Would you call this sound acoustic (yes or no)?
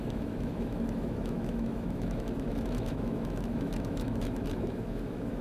no